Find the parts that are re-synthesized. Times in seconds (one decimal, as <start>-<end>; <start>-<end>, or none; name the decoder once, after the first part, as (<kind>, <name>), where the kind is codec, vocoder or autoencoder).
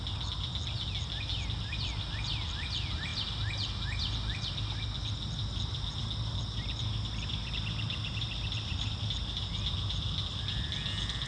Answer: none